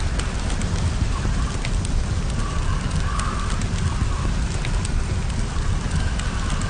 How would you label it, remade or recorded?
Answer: recorded